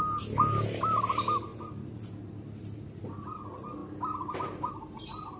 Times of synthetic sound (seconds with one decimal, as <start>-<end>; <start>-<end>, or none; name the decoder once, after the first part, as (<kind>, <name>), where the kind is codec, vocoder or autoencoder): none